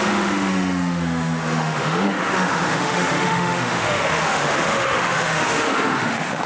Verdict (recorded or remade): remade